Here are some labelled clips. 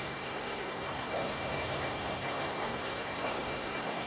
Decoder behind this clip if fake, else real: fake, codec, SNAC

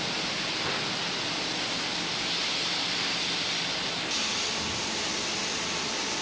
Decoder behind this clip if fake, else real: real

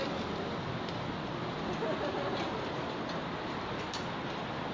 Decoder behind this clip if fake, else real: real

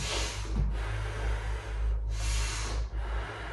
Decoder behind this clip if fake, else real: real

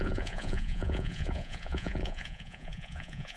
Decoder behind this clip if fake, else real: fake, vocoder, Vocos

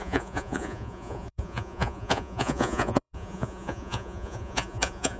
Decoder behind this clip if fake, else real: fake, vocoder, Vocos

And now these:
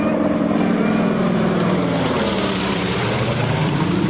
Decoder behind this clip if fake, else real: fake, vocoder, BigVGAN v2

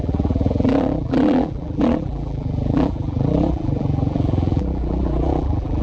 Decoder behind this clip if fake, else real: fake, vocoder, BigVGAN v2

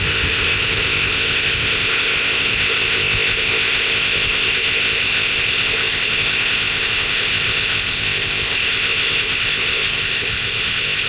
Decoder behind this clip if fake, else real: fake, codec, ZipCodec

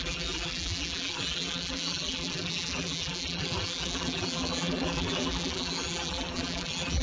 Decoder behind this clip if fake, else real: fake, vocoder, BigVGAN v2